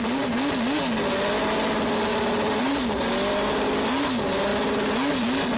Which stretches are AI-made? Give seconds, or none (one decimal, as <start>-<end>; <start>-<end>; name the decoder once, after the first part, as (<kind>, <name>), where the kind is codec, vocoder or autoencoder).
none